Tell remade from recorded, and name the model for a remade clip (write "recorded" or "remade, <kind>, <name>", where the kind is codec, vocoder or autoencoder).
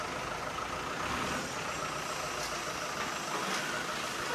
recorded